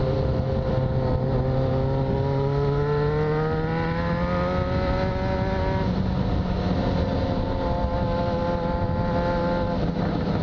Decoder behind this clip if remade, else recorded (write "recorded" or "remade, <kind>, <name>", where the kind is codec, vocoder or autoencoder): recorded